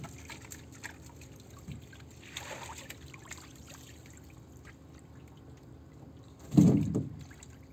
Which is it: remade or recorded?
recorded